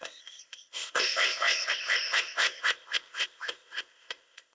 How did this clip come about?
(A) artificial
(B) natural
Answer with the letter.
A